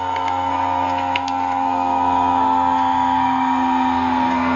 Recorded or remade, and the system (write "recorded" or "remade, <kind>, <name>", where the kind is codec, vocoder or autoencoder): remade, codec, SNAC